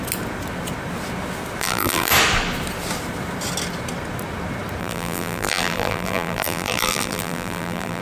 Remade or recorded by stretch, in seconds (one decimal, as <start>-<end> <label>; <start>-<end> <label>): 0.0-1.6 recorded; 1.6-2.1 remade; 2.1-4.8 recorded; 4.8-8.0 remade